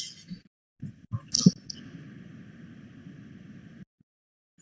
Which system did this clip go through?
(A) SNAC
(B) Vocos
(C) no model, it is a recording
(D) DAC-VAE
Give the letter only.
C